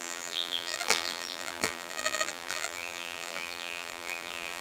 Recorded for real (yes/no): no